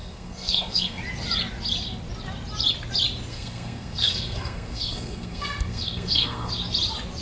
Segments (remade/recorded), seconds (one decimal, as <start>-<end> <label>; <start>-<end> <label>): 0.0-1.0 remade; 1.0-3.3 recorded; 3.3-6.5 remade; 6.5-7.2 recorded